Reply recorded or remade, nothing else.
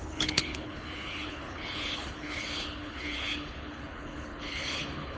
remade